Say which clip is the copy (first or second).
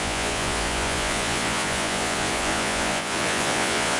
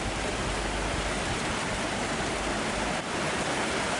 first